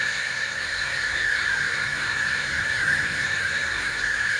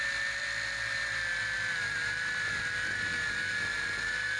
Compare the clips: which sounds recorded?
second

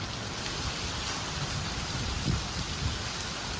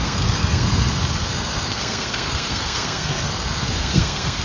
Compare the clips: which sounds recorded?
first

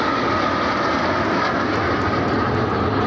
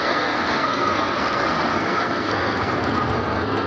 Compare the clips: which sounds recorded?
first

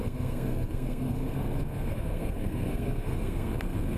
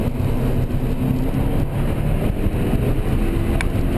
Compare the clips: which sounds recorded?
second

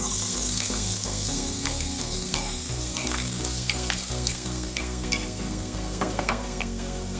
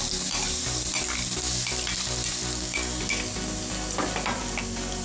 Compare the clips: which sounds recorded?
second